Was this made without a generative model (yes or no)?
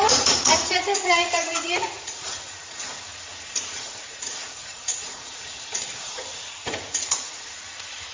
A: no